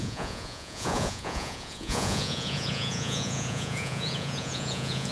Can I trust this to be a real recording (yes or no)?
no